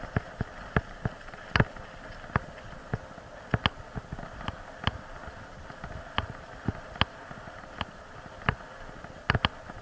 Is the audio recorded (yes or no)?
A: yes